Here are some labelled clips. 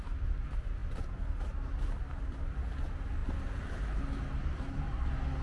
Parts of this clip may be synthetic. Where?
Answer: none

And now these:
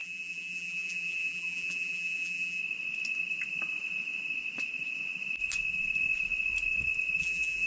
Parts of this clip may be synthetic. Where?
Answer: 0.0-2.6 (vocoder, BigVGAN v2); 7.2-7.7